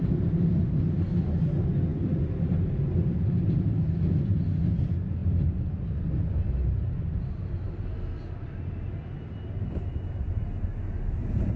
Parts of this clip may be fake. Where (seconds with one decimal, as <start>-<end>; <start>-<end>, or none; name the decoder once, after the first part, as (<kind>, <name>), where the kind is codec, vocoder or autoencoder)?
none

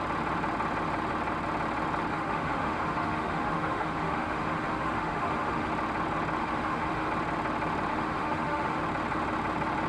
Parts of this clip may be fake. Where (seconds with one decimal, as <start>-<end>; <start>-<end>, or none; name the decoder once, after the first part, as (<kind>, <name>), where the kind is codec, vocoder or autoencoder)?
2.1-5.7 (autoencoder, DAC-VAE); 6.4-7.1; 7.9-8.8

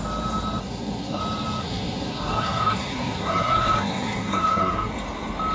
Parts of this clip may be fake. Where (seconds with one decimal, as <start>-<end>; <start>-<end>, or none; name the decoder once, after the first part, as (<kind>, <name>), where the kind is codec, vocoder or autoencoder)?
0.6-1.2 (codec, SNAC); 1.6-4.9

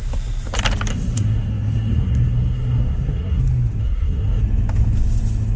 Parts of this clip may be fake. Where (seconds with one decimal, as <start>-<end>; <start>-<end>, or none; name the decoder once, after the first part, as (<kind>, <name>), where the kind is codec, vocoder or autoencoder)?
0.9-3.4 (codec, SNAC); 3.8-4.4

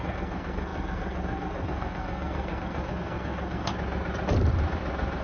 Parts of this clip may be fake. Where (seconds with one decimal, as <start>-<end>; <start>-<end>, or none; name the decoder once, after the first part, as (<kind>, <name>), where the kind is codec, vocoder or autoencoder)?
0.0-3.7 (codec, SNAC)

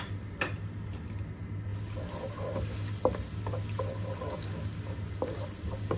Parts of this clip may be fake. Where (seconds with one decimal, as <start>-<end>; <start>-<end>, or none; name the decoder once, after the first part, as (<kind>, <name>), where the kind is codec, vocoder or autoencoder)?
none